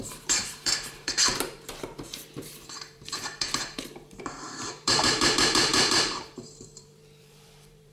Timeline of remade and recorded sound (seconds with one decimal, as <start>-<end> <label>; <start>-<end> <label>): 0.0-7.9 remade